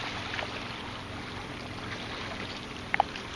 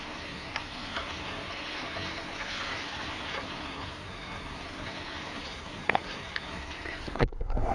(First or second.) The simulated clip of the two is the second